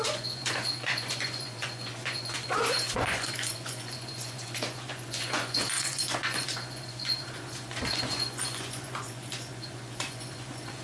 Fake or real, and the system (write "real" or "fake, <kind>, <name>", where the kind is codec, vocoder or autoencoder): fake, vocoder, Vocos